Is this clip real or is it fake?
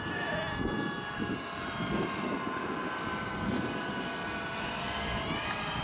real